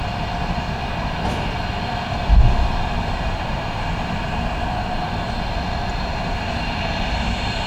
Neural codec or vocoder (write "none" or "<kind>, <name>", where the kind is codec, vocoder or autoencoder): none